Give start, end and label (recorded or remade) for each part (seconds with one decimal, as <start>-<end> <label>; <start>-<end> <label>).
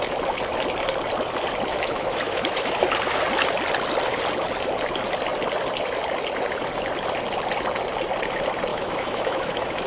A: 0.0-1.7 recorded; 1.7-2.7 remade; 2.7-8.7 recorded; 8.7-9.9 remade